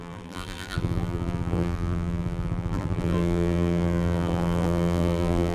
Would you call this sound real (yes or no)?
no